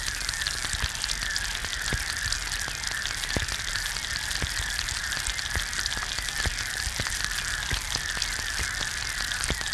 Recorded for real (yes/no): yes